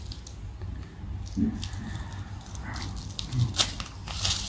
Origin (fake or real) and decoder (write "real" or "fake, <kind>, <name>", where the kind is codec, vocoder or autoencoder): real